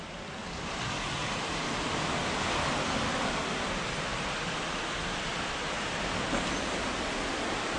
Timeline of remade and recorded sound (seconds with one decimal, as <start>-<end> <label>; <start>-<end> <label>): 0.0-2.2 recorded; 2.2-3.5 remade; 3.5-4.1 recorded; 4.1-5.5 remade; 5.5-7.8 recorded